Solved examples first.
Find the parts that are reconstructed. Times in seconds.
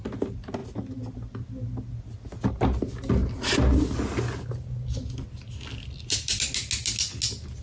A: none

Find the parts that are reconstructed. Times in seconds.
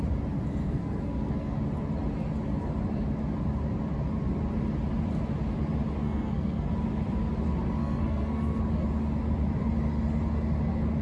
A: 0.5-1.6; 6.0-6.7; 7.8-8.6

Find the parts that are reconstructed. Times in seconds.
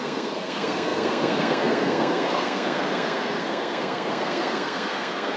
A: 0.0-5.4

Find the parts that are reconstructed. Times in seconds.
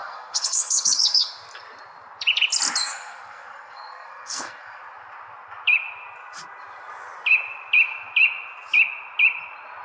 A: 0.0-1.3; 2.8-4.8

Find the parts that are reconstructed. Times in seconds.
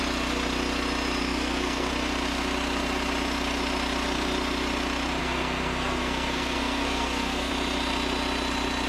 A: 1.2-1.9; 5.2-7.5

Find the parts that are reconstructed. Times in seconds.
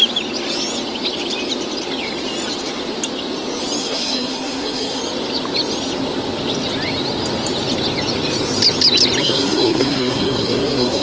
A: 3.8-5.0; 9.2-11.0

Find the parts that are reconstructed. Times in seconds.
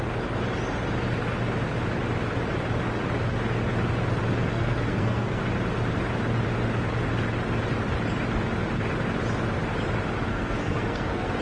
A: 4.5-5.4; 10.3-11.4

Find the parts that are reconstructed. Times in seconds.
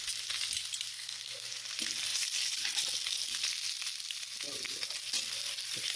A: 0.9-1.5